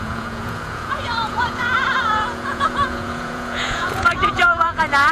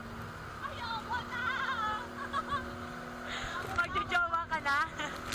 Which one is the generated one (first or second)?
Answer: first